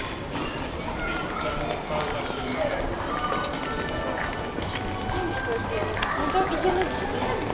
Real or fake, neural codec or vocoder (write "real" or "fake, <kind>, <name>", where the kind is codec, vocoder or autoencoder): real